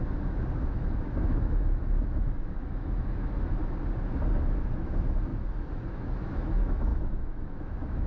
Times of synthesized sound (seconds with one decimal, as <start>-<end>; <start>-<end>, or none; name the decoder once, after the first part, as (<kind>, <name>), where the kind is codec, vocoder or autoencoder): 0.0-3.6 (autoencoder, DAC-VAE); 4.6-8.1